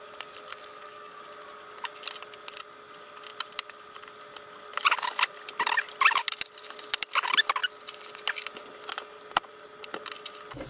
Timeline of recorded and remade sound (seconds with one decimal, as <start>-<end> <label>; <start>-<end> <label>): 0.0-0.5 recorded; 0.5-1.2 remade; 1.2-10.7 recorded